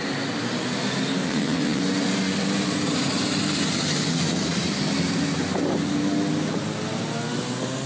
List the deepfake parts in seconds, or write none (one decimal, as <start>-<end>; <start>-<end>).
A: 1.2-1.8